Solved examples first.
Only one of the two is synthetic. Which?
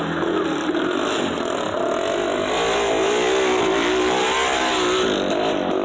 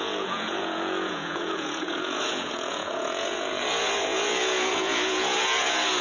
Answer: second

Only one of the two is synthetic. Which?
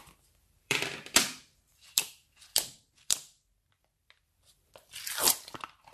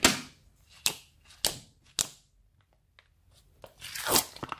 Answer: first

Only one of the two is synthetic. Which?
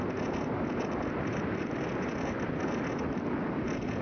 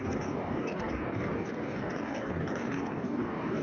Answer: second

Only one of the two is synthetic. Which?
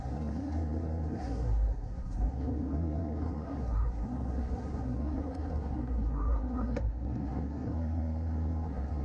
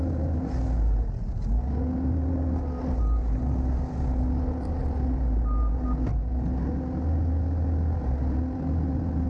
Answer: first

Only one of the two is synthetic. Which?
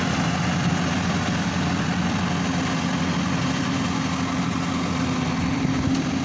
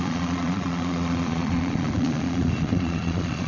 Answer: second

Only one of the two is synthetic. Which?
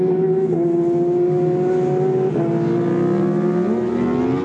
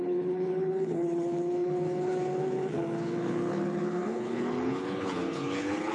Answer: second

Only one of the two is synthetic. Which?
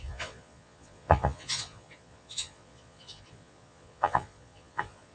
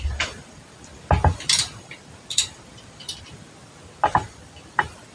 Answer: first